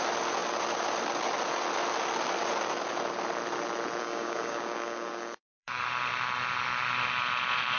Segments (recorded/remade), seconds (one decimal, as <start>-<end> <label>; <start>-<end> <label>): 0.0-4.0 recorded; 4.0-5.8 remade; 5.8-7.8 recorded